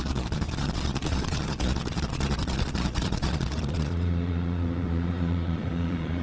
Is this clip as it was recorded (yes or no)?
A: no